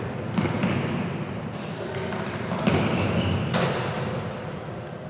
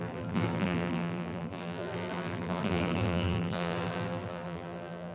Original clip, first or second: first